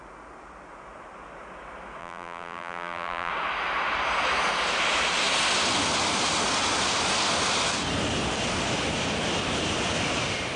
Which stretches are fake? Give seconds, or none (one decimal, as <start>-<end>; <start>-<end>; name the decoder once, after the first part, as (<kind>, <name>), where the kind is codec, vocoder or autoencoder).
2.0-3.3 (vocoder, BigVGAN v2)